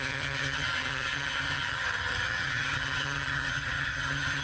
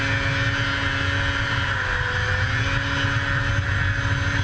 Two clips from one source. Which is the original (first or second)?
second